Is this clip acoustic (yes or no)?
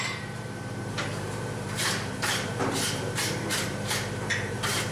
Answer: no